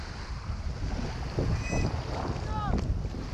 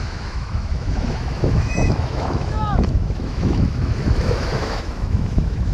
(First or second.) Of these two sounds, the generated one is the second